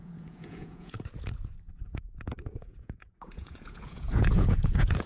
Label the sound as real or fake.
fake